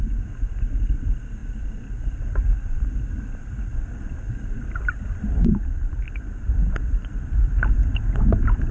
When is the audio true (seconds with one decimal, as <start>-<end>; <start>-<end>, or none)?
0.0-3.7; 7.7-8.7